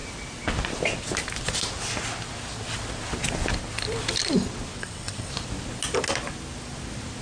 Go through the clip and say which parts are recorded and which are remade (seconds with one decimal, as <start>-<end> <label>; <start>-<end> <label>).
0.0-4.8 recorded; 4.8-5.3 remade; 5.3-7.2 recorded

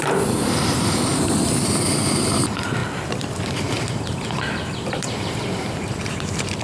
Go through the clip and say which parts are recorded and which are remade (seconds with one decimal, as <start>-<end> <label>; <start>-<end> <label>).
0.0-2.8 remade; 2.8-3.4 recorded; 3.4-6.6 remade

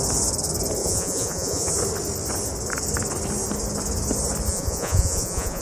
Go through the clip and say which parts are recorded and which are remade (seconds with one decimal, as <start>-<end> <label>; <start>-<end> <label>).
0.0-0.8 recorded; 0.8-1.7 remade; 1.7-4.5 recorded; 4.5-5.6 remade

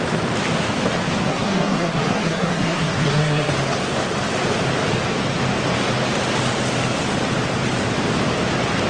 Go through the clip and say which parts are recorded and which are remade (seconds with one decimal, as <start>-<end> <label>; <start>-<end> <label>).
0.0-1.3 recorded; 1.3-3.5 remade; 3.5-8.9 recorded

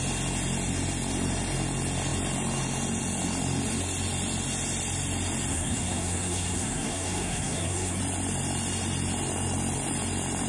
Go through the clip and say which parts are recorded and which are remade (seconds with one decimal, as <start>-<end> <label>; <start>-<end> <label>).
0.0-5.5 recorded; 5.5-8.0 remade; 8.0-10.5 recorded

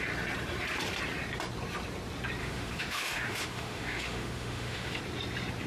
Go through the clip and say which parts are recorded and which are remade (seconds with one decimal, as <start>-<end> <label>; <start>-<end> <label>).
0.0-2.4 recorded; 2.4-5.0 remade; 5.0-5.7 recorded